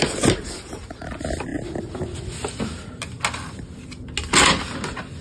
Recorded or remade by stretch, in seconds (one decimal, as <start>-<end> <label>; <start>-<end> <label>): 0.0-5.2 recorded